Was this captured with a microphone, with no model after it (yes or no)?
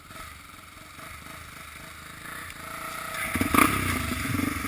yes